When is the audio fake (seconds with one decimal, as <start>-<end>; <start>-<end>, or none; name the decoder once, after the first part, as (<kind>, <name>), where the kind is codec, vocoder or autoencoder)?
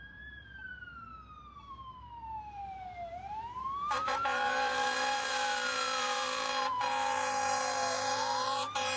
0.0-9.0 (vocoder, BigVGAN v2)